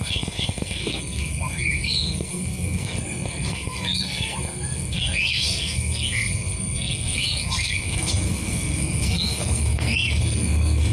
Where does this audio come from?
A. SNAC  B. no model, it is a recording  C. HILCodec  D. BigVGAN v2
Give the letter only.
A